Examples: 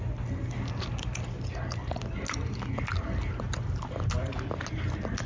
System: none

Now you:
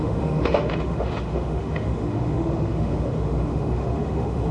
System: autoencoder, DAC-VAE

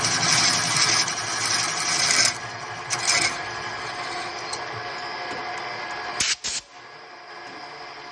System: none